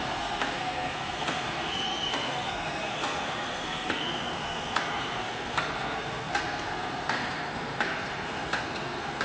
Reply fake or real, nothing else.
fake